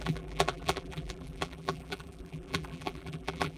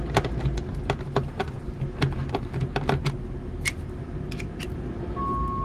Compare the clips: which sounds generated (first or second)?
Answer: first